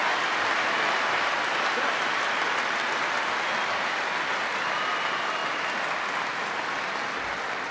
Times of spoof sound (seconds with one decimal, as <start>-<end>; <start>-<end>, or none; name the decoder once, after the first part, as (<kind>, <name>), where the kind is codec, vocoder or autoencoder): none